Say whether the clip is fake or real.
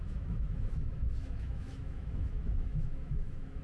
fake